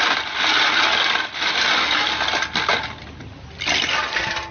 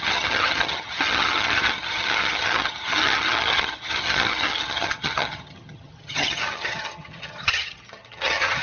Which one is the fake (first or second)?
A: second